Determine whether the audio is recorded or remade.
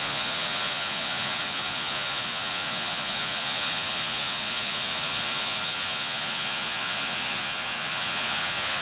remade